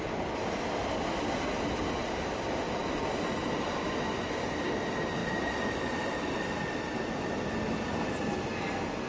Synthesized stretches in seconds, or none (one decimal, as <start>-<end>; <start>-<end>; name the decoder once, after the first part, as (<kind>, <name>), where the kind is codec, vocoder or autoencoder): none

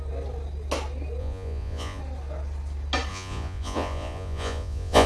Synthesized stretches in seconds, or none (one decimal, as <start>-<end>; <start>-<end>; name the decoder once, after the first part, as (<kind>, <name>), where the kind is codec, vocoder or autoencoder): 1.2-2.0 (vocoder, Vocos); 3.1-5.1

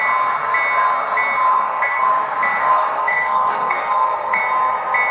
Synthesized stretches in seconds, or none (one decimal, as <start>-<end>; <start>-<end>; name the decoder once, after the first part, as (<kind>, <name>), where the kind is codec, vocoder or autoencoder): 1.5-2.0 (codec, SNAC); 2.6-4.4

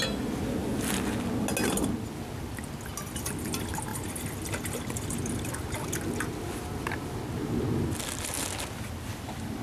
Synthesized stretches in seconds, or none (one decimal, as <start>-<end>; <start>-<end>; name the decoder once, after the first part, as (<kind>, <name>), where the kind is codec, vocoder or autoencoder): none

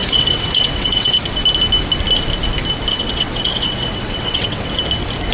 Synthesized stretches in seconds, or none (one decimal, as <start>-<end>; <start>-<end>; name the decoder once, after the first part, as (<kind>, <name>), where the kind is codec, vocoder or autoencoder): 0.0-1.2 (vocoder, WaveNeXt); 2.9-4.7

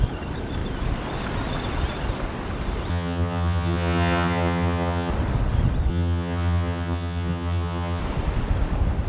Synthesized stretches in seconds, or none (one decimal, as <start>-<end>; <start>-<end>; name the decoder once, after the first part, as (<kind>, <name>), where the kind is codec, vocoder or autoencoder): 2.9-5.1 (vocoder, HiFi-GAN); 5.9-8.0

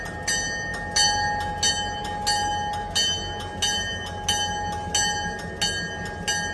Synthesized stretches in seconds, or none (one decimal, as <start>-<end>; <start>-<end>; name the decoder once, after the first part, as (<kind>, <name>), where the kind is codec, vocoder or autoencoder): none